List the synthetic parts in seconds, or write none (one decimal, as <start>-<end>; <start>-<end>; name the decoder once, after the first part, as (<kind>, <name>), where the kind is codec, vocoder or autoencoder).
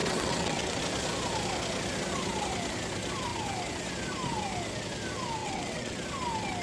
0.0-0.8 (vocoder, WaveNeXt); 5.4-6.0